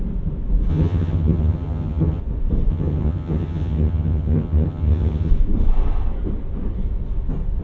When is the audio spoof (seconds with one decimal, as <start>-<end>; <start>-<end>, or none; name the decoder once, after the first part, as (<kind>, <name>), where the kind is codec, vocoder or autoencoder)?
0.7-2.2 (vocoder, HiFi-GAN); 2.7-5.3